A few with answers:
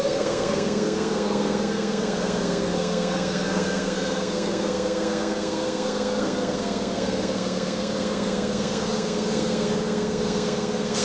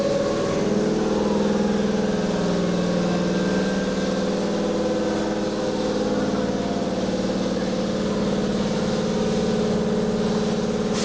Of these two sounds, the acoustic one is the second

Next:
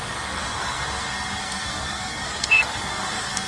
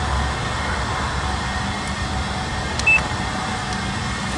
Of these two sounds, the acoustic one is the second